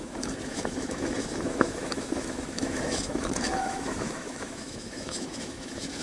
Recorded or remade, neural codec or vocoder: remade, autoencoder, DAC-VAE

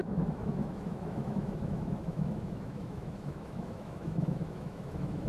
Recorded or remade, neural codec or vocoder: remade, autoencoder, DAC-VAE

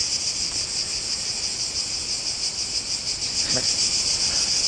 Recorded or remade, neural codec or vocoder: recorded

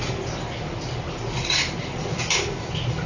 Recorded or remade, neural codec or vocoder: recorded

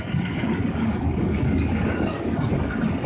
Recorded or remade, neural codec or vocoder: remade, codec, DAC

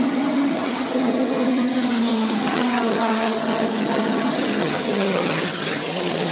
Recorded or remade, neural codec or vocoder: remade, vocoder, HiFi-GAN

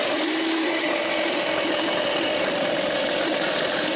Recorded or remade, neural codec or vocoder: recorded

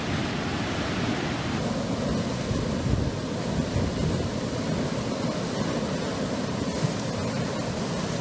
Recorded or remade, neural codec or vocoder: recorded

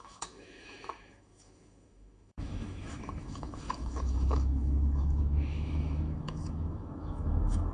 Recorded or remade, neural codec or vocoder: remade, autoencoder, DAC-VAE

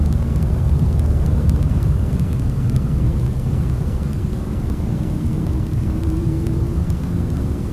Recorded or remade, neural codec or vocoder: remade, codec, SNAC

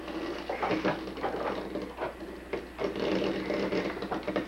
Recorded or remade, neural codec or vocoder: recorded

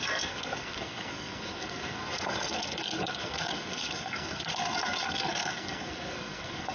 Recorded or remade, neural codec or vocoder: remade, codec, SNAC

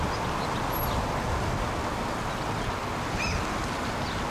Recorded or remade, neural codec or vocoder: recorded